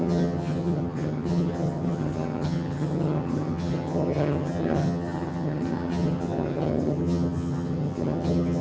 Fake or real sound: fake